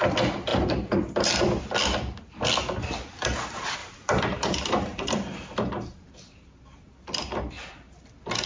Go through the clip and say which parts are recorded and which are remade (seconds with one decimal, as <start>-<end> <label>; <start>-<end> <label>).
0.0-0.5 recorded; 0.5-1.6 remade; 1.6-3.8 recorded; 3.8-6.1 remade; 6.1-8.5 recorded